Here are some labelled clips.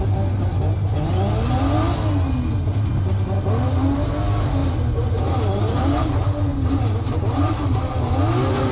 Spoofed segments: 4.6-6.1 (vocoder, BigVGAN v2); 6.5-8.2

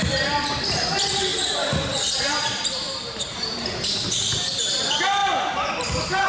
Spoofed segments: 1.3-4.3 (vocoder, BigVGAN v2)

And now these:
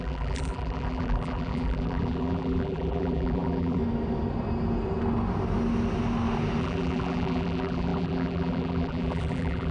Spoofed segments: 0.0-3.8 (vocoder, BigVGAN v2); 6.6-9.7

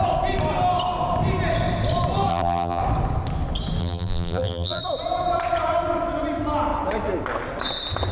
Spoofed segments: 2.3-2.8 (vocoder, BigVGAN v2); 3.8-4.8

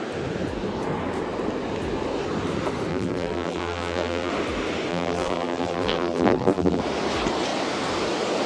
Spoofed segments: 2.9-4.3 (vocoder, BigVGAN v2); 4.9-6.8